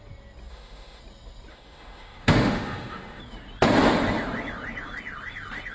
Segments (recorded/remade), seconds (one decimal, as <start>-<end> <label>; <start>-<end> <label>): 0.0-0.5 recorded; 0.5-1.0 remade; 1.0-1.5 recorded; 1.5-3.2 remade; 3.2-5.7 recorded